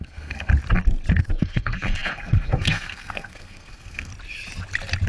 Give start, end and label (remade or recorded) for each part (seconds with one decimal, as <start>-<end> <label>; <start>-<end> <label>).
0.0-0.5 remade; 0.5-1.2 recorded; 1.2-4.1 remade; 4.1-5.1 recorded